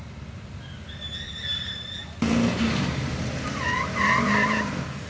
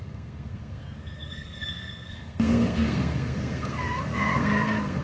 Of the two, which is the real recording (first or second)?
first